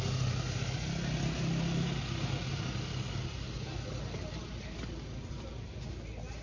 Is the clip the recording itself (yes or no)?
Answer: yes